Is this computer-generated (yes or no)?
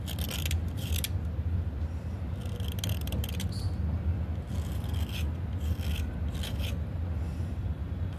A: no